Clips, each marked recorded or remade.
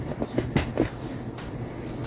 recorded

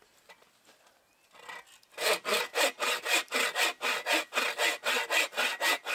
recorded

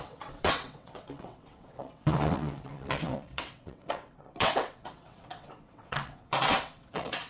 remade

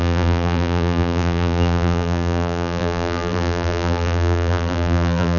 remade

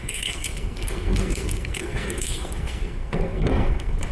remade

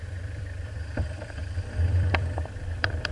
remade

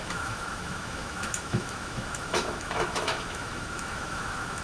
remade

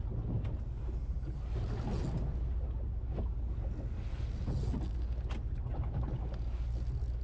recorded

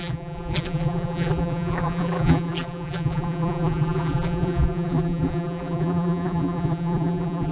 remade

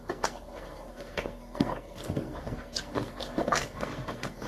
remade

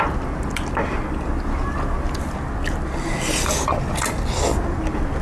recorded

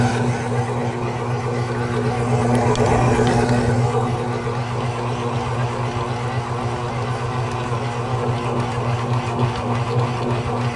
recorded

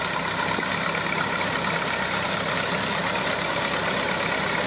recorded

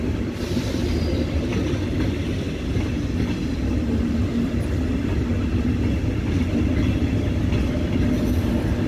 recorded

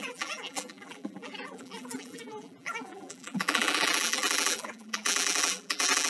remade